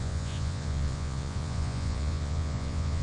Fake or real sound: fake